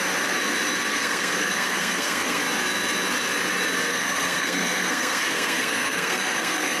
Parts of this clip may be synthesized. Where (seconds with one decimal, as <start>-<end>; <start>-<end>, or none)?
0.9-2.4; 3.9-6.8